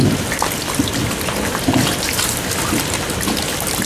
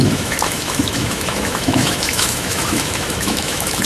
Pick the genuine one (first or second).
first